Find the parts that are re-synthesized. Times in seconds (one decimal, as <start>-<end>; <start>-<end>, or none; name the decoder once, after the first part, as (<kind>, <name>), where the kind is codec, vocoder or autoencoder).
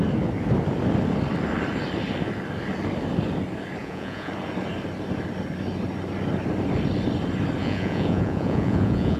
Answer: 3.8-4.3 (vocoder, Vocos); 7.6-9.2